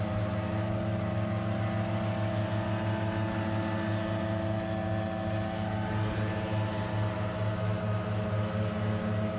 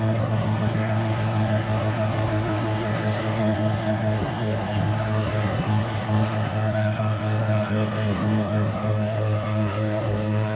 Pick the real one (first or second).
first